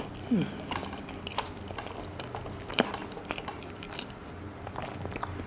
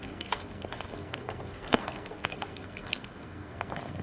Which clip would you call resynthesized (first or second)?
second